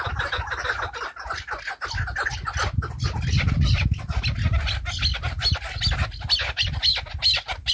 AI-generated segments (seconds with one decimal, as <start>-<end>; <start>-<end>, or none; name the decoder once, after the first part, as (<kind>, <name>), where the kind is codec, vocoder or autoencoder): none